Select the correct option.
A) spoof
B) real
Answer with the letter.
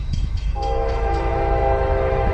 A